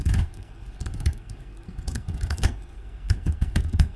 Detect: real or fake fake